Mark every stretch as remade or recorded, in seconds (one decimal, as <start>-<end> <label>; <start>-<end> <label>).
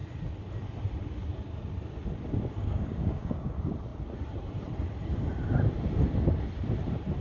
0.0-2.6 recorded; 2.6-3.5 remade; 3.5-7.2 recorded